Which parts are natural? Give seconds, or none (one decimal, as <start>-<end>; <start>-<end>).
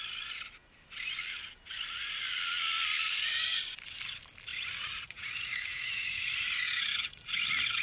0.0-4.5; 7.2-7.8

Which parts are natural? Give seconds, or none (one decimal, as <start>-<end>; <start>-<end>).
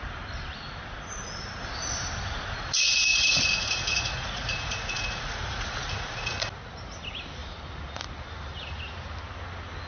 0.0-3.1; 6.4-9.9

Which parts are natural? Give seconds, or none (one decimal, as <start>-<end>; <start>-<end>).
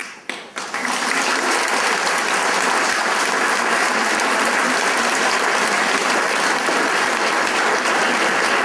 0.0-8.6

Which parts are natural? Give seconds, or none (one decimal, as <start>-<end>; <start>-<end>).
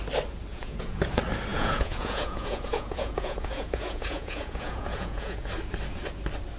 0.0-0.5; 1.0-1.5; 5.5-6.6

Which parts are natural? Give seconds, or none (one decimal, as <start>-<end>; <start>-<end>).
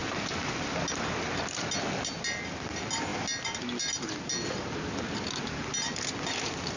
0.0-6.8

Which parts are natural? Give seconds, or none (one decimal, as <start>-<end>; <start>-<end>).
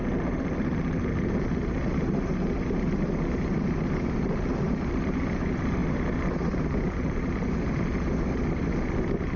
0.0-9.4